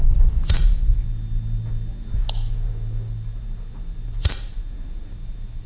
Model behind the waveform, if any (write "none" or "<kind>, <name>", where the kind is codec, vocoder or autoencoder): none